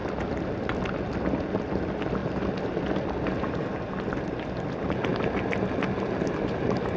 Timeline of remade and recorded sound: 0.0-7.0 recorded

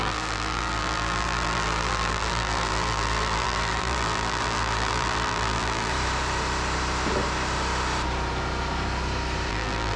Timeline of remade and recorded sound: 0.0-5.9 remade; 5.9-9.5 recorded; 9.5-10.0 remade

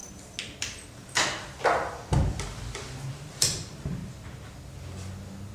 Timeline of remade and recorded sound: 0.0-4.0 recorded; 4.0-4.5 remade; 4.5-5.5 recorded

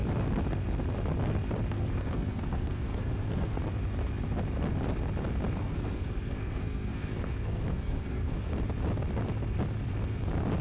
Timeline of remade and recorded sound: 0.0-1.7 recorded; 1.7-3.6 remade; 3.6-5.6 recorded; 5.6-8.5 remade; 8.5-10.6 recorded

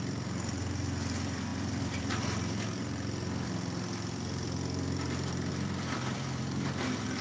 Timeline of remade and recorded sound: 0.0-7.2 remade

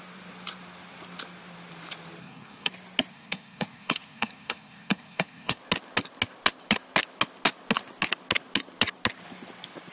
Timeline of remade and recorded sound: 0.0-2.2 recorded; 2.2-2.7 remade; 2.7-3.1 recorded; 3.1-5.6 remade; 5.6-9.9 recorded

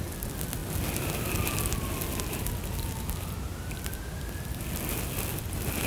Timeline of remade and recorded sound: 0.0-5.9 recorded